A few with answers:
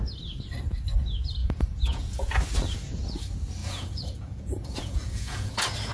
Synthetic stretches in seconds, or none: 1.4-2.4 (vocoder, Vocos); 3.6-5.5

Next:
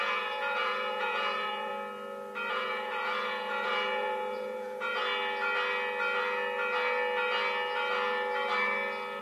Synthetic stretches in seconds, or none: 0.0-1.7 (vocoder, Vocos); 2.5-5.0

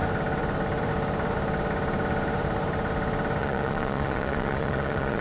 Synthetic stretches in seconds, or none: 3.4-5.2 (vocoder, Vocos)

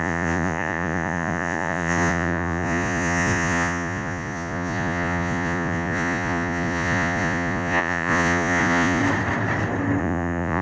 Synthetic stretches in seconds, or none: 0.0-9.0 (vocoder, Vocos); 10.0-10.6

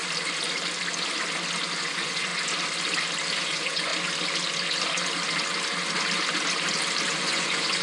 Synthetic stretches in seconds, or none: 1.8-2.3 (vocoder, Vocos); 3.4-3.9; 7.1-7.8

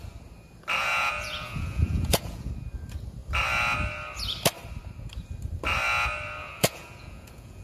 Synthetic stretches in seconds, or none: 0.8-2.5 (vocoder, Vocos); 6.4-7.6

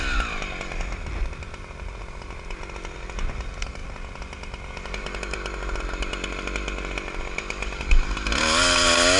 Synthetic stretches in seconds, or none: none

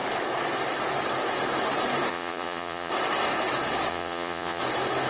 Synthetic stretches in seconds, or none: 2.1-2.9 (vocoder, Vocos); 3.9-4.6